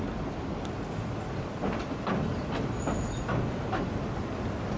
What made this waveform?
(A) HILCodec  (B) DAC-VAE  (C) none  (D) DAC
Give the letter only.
C